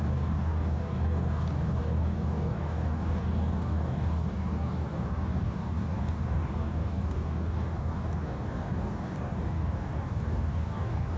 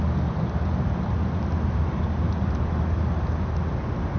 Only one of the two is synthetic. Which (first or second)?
first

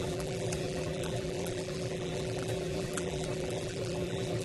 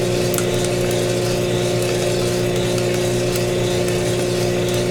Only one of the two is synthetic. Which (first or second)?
first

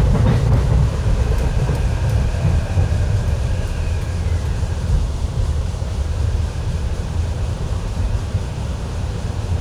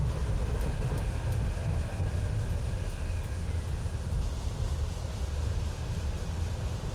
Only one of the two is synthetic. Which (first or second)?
first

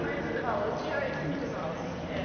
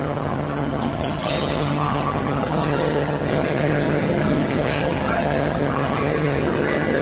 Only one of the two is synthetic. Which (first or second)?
second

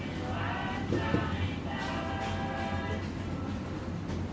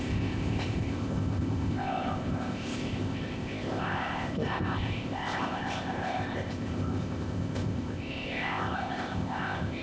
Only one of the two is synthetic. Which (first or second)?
second